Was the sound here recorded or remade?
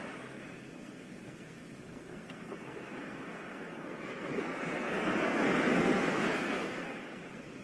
remade